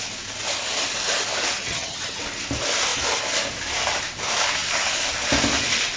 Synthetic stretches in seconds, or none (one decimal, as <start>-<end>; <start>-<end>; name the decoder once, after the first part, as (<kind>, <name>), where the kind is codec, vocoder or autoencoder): 1.6-2.2 (vocoder, HiFi-GAN)